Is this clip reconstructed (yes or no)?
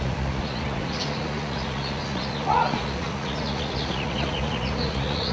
yes